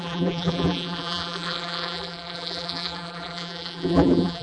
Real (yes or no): no